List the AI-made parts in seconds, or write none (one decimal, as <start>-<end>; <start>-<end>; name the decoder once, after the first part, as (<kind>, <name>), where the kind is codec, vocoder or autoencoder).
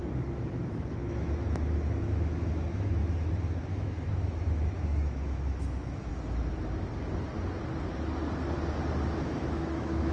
0.7-3.0 (autoencoder, DAC-VAE); 3.7-6.1; 9.2-10.1